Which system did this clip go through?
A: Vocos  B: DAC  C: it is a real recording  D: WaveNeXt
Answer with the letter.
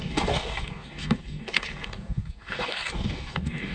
B